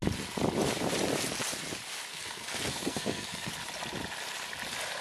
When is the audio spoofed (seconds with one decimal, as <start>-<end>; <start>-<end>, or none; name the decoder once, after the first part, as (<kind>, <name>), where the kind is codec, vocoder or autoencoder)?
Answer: 2.1-3.5 (codec, SNAC)